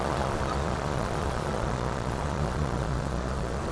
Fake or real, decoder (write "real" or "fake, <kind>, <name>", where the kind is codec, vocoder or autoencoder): fake, vocoder, Vocos